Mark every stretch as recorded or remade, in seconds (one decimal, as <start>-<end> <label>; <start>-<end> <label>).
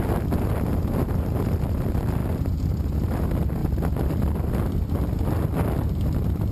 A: 0.0-6.5 recorded